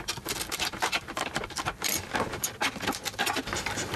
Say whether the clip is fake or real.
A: fake